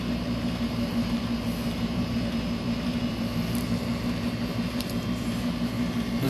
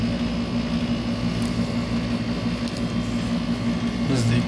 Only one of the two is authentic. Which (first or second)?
second